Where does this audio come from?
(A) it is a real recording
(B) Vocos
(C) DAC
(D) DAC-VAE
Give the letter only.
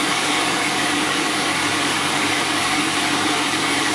C